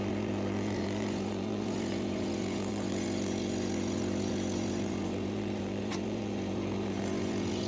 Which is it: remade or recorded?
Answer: remade